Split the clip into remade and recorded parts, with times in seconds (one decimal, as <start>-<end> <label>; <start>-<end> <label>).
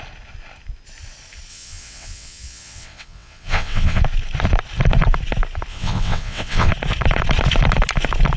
0.0-1.5 recorded; 1.5-4.0 remade; 4.0-5.7 recorded; 5.7-6.7 remade; 6.7-8.4 recorded